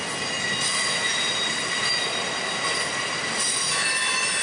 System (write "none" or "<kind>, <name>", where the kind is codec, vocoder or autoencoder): none